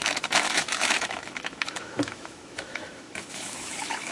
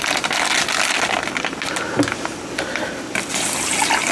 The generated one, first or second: first